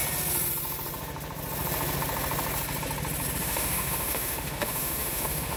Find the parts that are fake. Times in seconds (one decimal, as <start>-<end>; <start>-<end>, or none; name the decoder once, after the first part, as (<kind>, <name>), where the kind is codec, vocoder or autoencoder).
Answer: 3.4-5.6 (autoencoder, DAC-VAE)